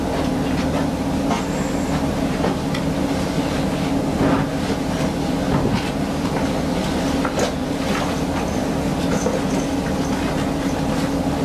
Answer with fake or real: real